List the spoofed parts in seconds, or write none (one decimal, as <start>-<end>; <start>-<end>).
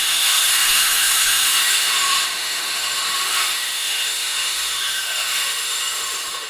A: 0.0-6.5